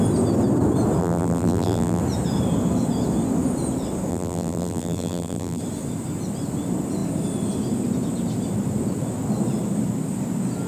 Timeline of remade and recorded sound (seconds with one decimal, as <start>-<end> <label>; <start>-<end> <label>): 0.0-1.0 recorded; 1.0-2.0 remade; 2.0-4.1 recorded; 4.1-5.6 remade; 5.6-10.7 recorded